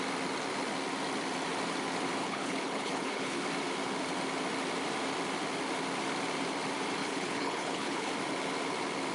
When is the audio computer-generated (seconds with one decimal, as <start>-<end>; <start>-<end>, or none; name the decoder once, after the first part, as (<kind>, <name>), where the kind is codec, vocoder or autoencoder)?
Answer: 2.2-3.4 (codec, HILCodec); 7.0-8.1